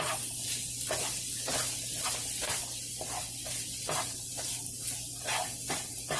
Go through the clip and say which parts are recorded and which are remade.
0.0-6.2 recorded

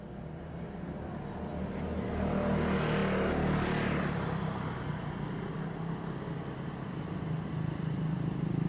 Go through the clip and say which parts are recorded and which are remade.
0.0-8.7 recorded

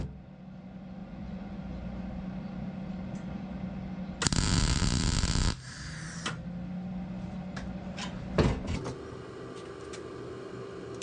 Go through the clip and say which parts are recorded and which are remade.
0.0-1.0 recorded; 1.0-1.6 remade; 1.6-11.0 recorded

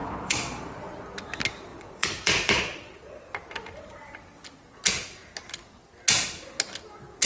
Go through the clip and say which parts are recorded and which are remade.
0.0-0.8 remade; 0.8-1.7 recorded; 1.7-3.2 remade; 3.2-7.3 recorded

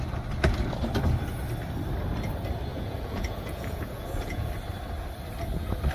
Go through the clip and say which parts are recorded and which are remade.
0.0-2.7 recorded; 2.7-4.5 remade; 4.5-5.9 recorded